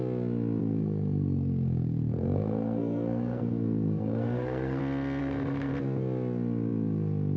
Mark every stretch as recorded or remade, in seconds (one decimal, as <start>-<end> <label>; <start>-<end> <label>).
0.0-0.6 recorded; 0.6-4.8 remade; 4.8-5.2 recorded; 5.2-5.7 remade; 5.7-7.4 recorded